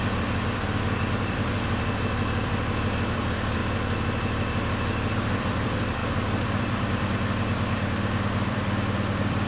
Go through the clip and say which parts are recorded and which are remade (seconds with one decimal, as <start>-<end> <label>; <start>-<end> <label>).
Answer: 0.0-3.6 remade; 3.6-5.1 recorded; 5.1-9.5 remade